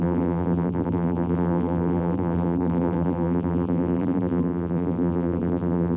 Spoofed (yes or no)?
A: yes